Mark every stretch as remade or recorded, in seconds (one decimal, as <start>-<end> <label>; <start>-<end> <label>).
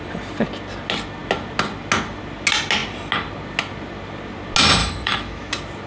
0.0-4.8 recorded; 4.8-5.5 remade; 5.5-5.9 recorded